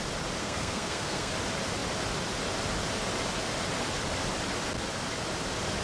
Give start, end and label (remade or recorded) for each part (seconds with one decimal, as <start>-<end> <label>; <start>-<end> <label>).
0.0-0.4 recorded; 0.4-1.3 remade; 1.3-5.8 recorded

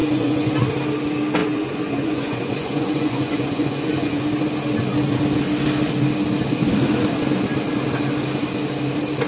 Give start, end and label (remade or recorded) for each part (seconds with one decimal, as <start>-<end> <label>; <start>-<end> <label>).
0.0-0.5 remade; 0.5-1.4 recorded; 1.4-4.2 remade; 4.2-9.3 recorded

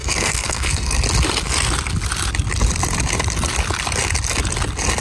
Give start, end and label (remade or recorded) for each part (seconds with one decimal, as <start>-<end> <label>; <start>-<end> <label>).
0.0-1.0 remade; 1.0-5.0 recorded

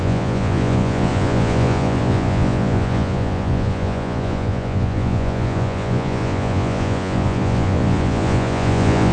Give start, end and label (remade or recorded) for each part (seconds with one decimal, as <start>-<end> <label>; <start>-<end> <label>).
0.0-9.1 remade